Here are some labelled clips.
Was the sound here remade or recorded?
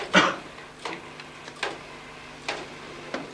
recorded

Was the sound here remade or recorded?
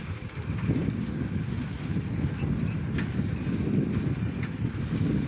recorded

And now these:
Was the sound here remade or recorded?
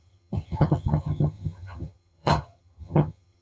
remade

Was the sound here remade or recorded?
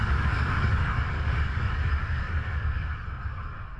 remade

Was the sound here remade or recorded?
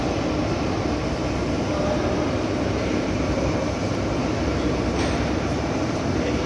remade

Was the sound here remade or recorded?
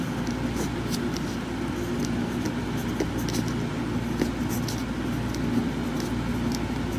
recorded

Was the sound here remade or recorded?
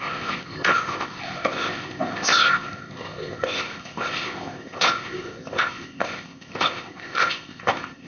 remade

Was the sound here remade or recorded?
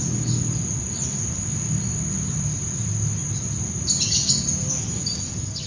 recorded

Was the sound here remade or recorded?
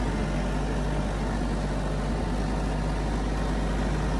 recorded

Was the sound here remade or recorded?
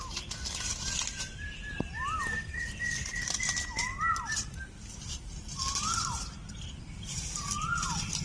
recorded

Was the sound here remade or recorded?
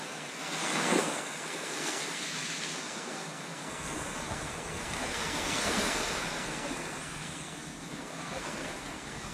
remade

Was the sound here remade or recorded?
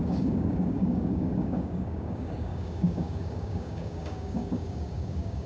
remade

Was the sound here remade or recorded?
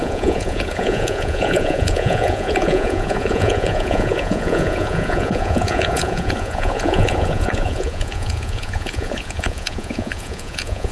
remade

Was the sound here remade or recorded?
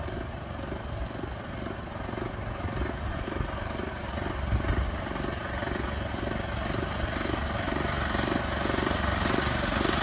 recorded